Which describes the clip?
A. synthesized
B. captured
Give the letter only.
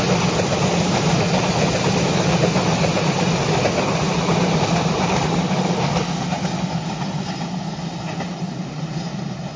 B